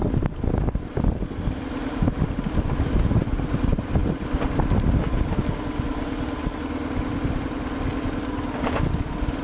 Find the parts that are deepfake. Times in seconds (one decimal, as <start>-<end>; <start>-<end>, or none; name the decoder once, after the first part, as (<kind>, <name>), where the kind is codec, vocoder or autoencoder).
none